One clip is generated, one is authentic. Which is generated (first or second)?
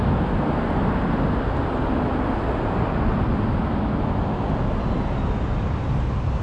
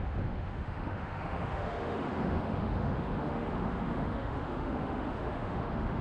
second